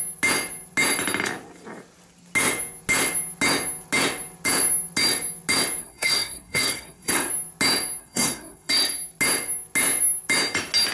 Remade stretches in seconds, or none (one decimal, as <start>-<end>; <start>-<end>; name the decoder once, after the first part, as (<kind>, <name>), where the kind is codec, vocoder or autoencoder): 5.8-7.3 (codec, SNAC); 8.0-8.7